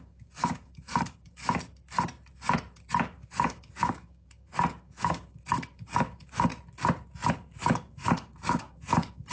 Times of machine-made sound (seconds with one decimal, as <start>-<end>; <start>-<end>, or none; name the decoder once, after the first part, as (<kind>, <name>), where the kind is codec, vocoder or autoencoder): 0.0-1.4 (codec, DAC); 2.9-6.5; 7.3-9.3